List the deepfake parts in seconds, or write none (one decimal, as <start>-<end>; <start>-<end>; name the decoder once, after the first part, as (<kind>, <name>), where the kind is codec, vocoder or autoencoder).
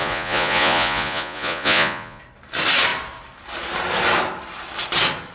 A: 0.0-2.2 (vocoder, Vocos)